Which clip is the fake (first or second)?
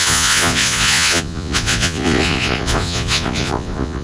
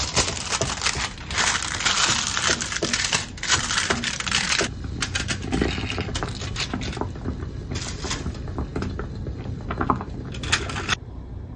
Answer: first